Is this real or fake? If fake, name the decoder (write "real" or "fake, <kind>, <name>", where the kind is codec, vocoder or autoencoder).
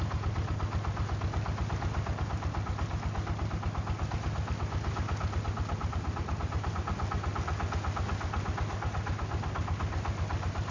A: real